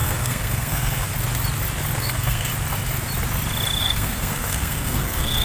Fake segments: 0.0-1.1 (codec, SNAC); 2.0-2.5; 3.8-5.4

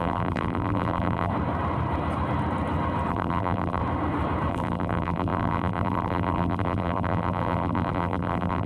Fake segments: 0.0-1.3 (vocoder, BigVGAN v2); 3.1-3.8; 4.5-8.7

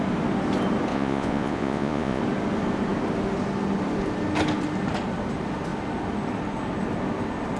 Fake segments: 0.9-2.2 (vocoder, Vocos)

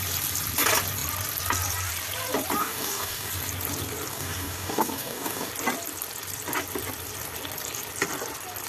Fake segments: 2.6-3.3 (codec, DAC); 4.1-5.5

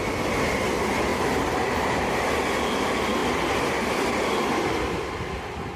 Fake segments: 1.1-2.3 (vocoder, BigVGAN v2)

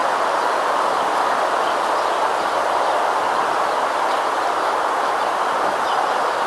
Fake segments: none

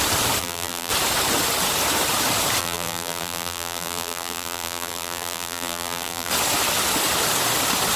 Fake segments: 0.4-0.9 (vocoder, BigVGAN v2); 2.6-6.3